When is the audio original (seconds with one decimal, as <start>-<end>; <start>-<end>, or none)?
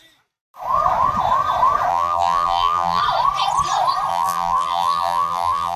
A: 0.0-1.9; 3.0-4.1